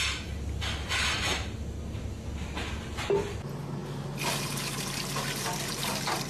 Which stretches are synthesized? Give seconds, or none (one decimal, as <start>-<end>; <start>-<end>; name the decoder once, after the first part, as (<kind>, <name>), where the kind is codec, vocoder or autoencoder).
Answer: none